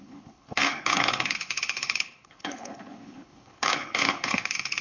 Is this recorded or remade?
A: remade